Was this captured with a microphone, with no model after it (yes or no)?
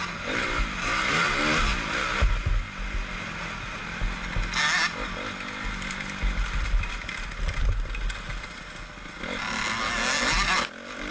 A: yes